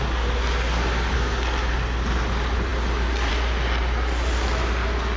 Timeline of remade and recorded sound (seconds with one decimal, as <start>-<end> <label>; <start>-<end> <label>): 0.0-5.2 recorded